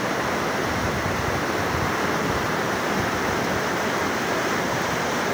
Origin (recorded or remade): recorded